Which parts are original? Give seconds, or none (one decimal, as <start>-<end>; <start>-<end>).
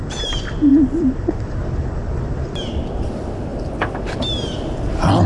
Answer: 0.0-5.3